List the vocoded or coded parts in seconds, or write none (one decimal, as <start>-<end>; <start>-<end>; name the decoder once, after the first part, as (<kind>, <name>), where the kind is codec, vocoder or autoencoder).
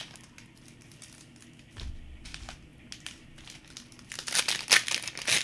none